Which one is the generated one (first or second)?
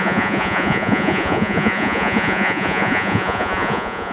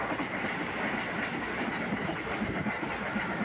first